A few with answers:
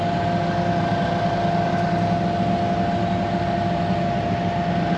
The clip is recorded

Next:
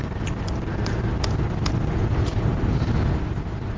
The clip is recorded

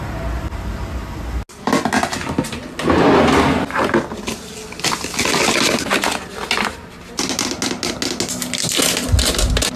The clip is recorded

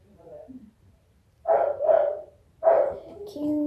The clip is remade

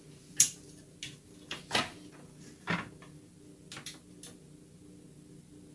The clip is recorded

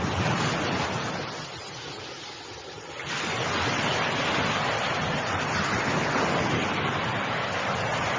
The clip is recorded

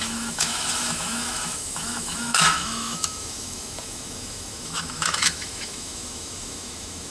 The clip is remade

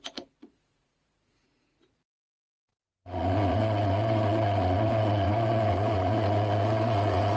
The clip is remade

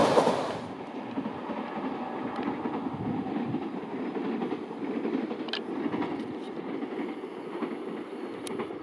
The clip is recorded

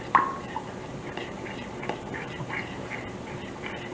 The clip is remade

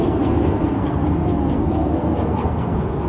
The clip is remade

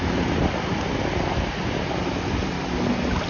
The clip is recorded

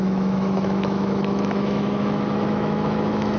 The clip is remade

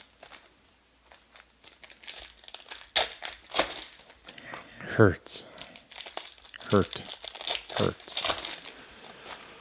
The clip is recorded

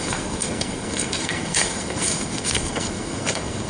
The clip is remade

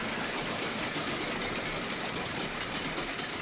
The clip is recorded